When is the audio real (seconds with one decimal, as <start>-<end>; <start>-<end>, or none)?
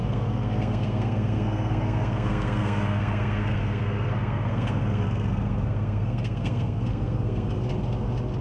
7.7-8.4